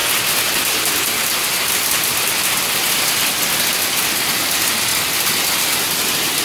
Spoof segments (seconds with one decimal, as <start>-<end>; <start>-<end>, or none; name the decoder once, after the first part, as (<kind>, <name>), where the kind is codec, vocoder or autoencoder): none